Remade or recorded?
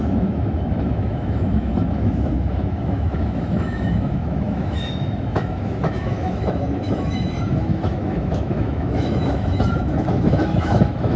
remade